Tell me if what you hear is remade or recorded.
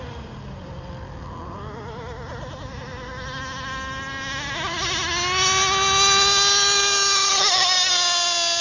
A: recorded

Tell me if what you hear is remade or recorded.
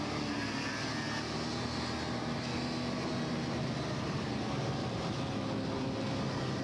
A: recorded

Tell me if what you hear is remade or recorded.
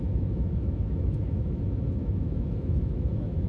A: remade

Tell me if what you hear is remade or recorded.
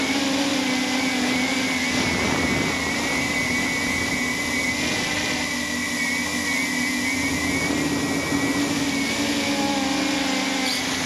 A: recorded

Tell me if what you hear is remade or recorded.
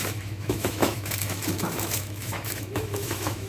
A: remade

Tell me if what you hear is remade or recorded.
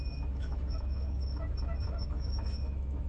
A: remade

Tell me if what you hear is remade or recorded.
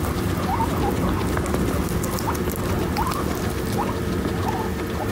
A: recorded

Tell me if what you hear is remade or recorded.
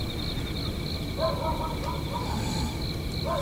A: recorded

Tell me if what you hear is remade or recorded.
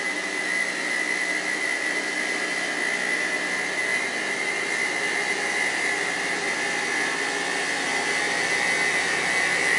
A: recorded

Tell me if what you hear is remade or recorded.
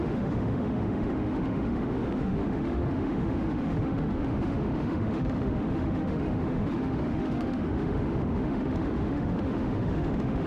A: remade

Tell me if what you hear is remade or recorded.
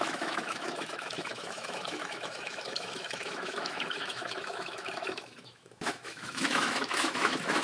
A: remade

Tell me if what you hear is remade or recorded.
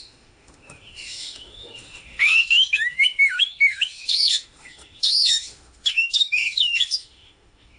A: remade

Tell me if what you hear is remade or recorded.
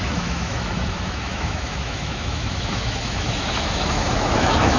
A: remade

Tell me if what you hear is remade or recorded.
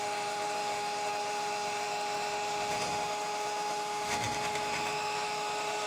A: remade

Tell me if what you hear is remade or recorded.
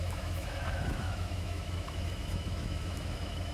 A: remade